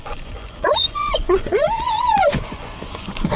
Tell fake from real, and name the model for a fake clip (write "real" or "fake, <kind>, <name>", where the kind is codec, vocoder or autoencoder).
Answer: fake, vocoder, Vocos